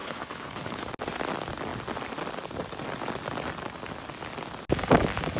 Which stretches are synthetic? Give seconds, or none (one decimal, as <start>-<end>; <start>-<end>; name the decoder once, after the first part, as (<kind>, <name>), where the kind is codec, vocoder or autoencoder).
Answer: 0.0-0.9 (codec, HILCodec)